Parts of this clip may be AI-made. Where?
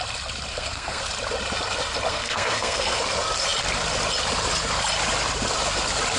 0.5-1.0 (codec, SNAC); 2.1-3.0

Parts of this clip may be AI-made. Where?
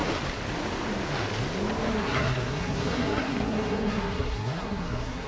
1.9-5.3 (codec, SNAC)